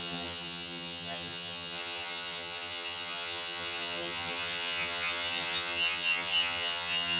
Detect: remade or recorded remade